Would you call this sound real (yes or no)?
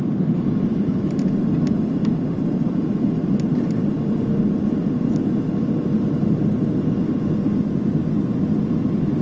yes